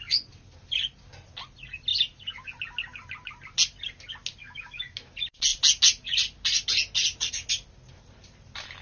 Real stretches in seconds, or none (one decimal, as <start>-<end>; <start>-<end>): 0.0-4.4; 5.1-8.8